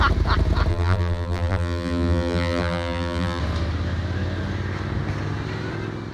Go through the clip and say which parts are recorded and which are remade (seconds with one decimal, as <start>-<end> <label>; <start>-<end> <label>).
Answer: 0.0-0.7 recorded; 0.7-3.4 remade; 3.4-6.1 recorded